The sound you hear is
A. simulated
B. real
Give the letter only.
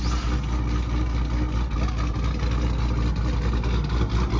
B